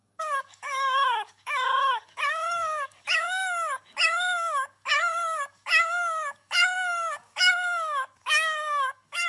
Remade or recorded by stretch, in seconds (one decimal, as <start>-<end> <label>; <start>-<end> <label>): 0.0-9.3 remade

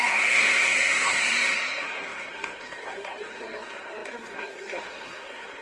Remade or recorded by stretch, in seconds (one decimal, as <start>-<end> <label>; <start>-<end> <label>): 0.0-5.6 remade